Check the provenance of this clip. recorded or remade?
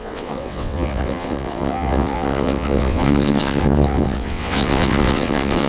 remade